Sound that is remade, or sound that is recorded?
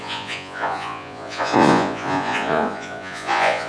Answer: remade